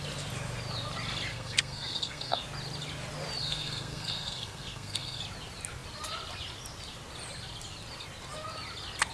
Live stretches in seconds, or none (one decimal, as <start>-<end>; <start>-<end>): 0.0-1.3; 2.4-3.4; 5.2-9.1